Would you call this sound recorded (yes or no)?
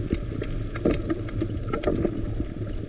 yes